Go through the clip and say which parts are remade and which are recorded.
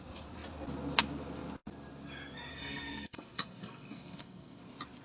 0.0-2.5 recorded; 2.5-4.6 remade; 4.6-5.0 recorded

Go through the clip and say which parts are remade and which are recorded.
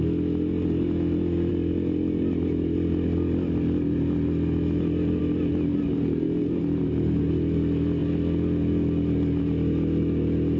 0.0-5.7 recorded; 5.7-7.2 remade; 7.2-10.6 recorded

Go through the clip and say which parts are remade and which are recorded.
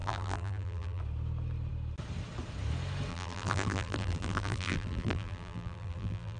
0.0-1.0 remade; 1.0-3.1 recorded; 3.1-6.4 remade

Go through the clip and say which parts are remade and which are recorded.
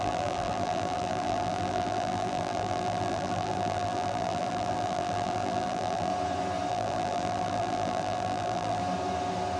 0.0-6.1 remade; 6.1-6.7 recorded; 6.7-8.8 remade; 8.8-9.6 recorded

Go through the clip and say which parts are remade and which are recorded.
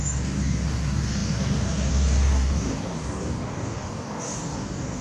0.0-5.0 remade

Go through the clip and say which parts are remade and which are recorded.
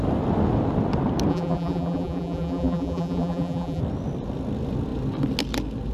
0.0-1.3 recorded; 1.3-3.8 remade; 3.8-5.9 recorded